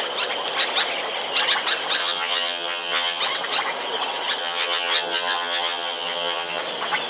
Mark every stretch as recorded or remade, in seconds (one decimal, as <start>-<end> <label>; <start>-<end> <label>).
0.0-2.0 recorded; 2.0-3.2 remade; 3.2-4.4 recorded; 4.4-6.6 remade; 6.6-7.1 recorded